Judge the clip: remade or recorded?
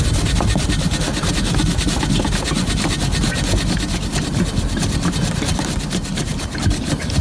recorded